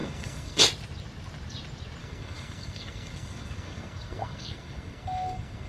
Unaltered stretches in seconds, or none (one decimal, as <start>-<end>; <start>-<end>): 0.6-2.0